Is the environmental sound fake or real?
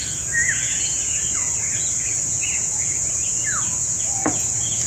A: fake